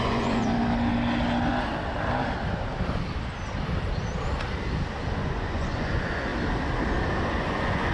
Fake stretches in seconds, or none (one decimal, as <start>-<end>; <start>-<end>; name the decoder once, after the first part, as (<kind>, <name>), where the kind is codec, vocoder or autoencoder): 0.0-0.5 (vocoder, Vocos); 5.2-6.3; 7.2-7.9

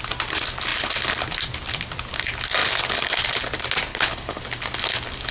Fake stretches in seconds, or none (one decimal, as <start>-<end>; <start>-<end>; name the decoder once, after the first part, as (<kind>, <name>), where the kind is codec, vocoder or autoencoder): 3.9-4.4 (codec, HILCodec)

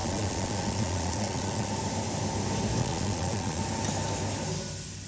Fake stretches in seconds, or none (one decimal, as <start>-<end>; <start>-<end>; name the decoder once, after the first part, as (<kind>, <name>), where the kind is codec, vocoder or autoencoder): 0.0-1.7 (vocoder, Vocos); 2.8-3.6

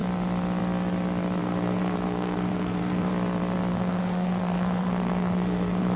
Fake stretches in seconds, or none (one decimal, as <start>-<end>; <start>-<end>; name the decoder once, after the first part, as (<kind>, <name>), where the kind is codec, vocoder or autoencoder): 1.4-3.1 (codec, SNAC); 3.7-6.0

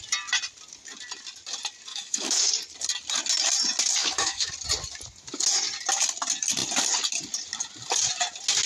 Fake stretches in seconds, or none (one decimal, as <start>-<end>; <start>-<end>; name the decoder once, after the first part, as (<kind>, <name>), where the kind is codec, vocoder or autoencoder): 1.9-2.5 (autoencoder, DAC-VAE); 4.0-4.5

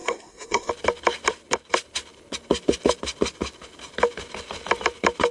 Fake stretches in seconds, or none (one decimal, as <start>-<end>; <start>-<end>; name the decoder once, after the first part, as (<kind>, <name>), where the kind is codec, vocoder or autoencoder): 0.0-0.7 (codec, SNAC)

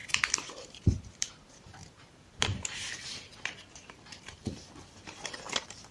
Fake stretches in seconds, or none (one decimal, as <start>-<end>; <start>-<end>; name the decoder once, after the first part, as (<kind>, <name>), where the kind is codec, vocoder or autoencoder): 0.0-4.4 (vocoder, BigVGAN v2); 4.9-5.9

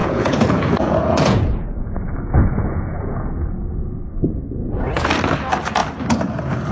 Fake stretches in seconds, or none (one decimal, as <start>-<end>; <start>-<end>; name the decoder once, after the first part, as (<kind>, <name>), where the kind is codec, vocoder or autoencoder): 0.0-4.0 (vocoder, Vocos); 4.6-5.1